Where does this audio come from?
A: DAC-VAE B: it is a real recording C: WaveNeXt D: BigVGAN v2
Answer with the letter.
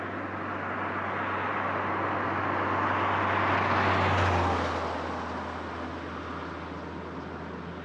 B